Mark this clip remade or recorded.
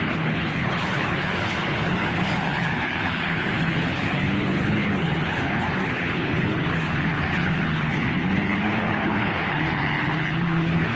remade